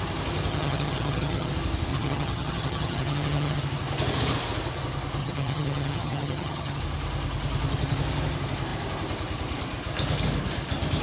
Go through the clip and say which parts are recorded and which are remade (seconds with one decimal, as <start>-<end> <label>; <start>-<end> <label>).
0.0-0.5 recorded; 0.5-1.5 remade; 1.5-1.9 recorded; 1.9-3.6 remade; 3.6-5.2 recorded; 5.2-6.8 remade; 6.8-11.0 recorded